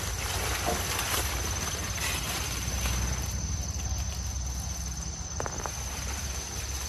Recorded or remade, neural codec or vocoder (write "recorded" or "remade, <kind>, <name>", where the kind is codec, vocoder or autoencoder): recorded